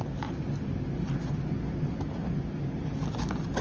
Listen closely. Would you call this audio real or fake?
real